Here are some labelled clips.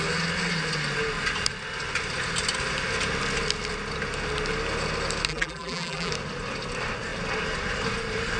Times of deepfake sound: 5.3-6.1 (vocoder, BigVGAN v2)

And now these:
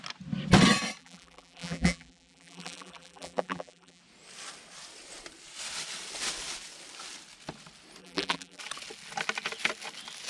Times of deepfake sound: 1.0-4.0 (vocoder, BigVGAN v2); 8.0-8.6

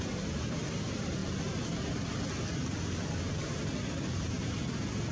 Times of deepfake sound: none

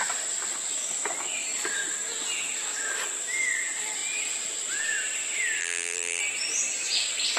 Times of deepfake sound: 5.6-6.2 (vocoder, BigVGAN v2)